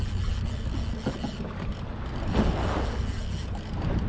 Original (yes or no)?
yes